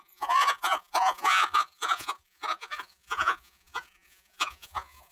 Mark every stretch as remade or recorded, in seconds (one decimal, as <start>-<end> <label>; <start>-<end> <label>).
0.0-5.1 remade